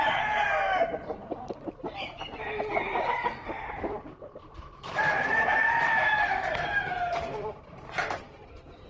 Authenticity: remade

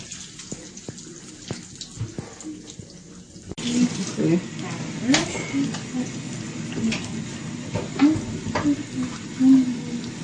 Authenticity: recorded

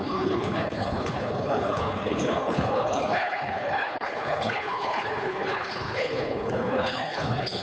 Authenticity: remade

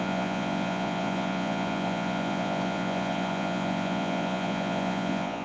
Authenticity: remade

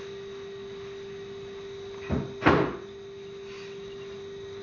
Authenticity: recorded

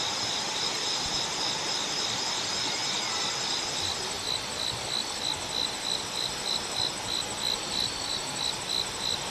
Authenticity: recorded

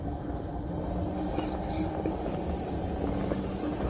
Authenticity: recorded